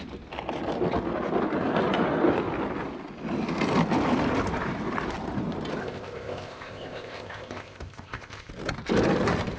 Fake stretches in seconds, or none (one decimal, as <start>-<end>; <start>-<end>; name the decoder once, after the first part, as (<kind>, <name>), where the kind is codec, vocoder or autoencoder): 5.8-8.5 (codec, ZipCodec)